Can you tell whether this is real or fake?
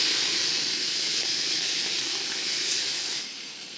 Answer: fake